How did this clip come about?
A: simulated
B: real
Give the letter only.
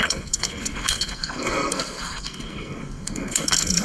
A